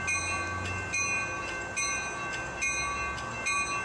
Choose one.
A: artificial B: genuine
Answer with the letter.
B